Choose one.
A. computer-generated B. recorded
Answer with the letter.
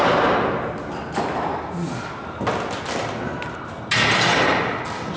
B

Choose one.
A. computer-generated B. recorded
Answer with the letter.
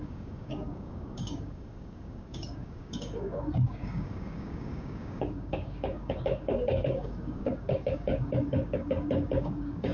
A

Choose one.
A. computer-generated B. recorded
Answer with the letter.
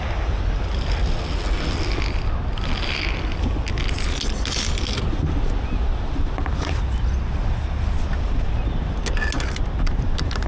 B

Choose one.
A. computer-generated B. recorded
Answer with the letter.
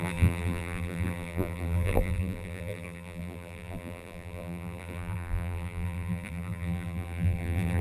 A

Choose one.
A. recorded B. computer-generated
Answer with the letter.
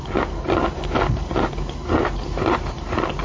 A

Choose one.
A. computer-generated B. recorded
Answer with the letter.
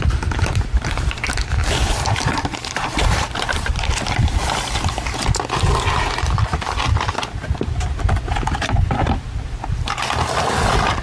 B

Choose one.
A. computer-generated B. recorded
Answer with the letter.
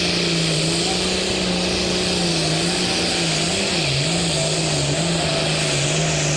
B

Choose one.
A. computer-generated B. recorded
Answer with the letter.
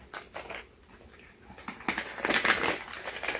B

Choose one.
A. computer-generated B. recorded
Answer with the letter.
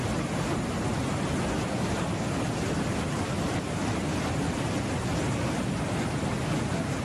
B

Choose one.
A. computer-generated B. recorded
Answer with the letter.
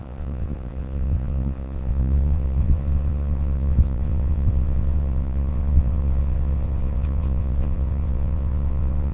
A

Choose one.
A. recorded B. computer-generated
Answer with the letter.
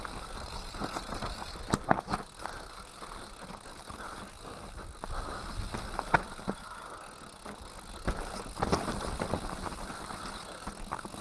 A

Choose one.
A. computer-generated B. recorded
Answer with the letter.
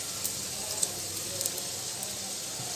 B